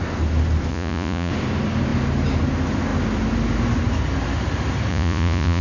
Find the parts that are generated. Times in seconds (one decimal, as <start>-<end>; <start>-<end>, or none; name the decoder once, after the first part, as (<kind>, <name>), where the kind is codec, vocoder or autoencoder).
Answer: 0.7-1.3 (vocoder, Vocos); 4.9-5.6